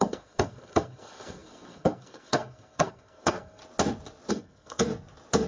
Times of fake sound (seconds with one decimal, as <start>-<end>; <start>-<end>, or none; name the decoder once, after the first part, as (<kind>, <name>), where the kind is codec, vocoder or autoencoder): 0.0-3.6 (codec, SNAC); 4.3-4.9